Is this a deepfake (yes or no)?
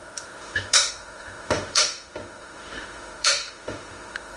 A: yes